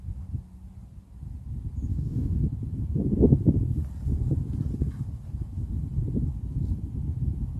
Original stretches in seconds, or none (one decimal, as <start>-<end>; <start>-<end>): 0.0-1.9; 2.4-7.6